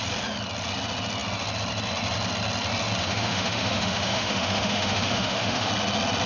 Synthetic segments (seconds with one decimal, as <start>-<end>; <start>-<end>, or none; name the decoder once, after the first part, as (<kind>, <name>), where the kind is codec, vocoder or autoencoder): 3.0-5.7 (autoencoder, DAC-VAE)